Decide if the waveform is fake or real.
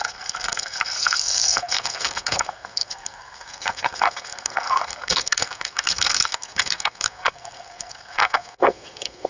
fake